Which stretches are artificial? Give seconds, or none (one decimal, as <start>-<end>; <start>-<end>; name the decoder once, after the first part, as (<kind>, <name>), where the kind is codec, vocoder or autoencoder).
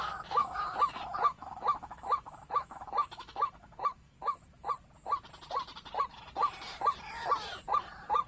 0.4-4.7 (autoencoder, DAC-VAE)